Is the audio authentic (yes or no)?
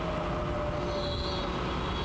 yes